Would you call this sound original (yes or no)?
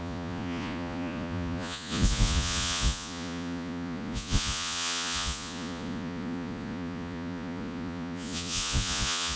no